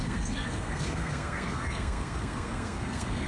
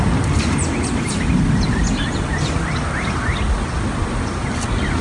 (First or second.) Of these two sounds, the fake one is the first